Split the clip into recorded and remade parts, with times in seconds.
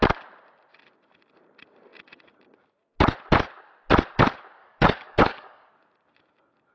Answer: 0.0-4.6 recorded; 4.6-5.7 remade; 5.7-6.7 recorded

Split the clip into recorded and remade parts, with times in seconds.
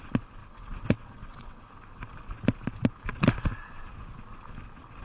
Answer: 0.0-0.4 recorded; 0.4-1.7 remade; 1.7-5.0 recorded